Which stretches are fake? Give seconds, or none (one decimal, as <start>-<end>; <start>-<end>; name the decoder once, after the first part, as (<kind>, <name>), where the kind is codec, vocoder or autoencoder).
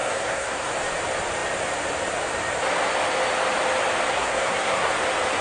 0.0-0.7 (codec, SNAC); 4.1-4.9